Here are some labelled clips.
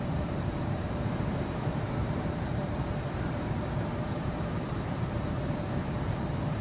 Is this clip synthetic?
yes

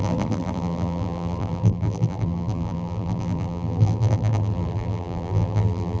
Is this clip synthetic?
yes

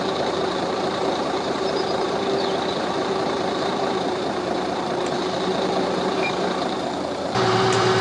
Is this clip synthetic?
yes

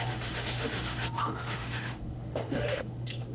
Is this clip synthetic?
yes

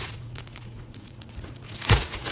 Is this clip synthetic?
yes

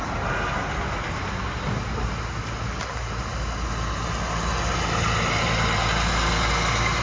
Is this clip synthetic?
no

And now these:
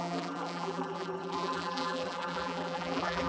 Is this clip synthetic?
yes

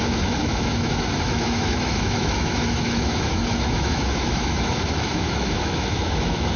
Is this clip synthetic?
yes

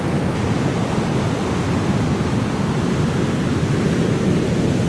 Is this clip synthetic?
no